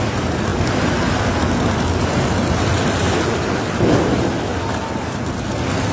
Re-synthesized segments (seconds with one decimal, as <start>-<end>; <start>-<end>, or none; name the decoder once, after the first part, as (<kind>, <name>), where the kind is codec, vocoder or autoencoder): none